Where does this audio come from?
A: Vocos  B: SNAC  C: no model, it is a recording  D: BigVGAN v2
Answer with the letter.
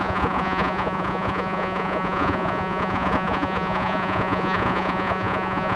A